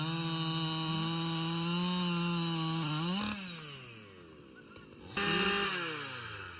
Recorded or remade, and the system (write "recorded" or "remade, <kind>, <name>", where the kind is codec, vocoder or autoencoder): recorded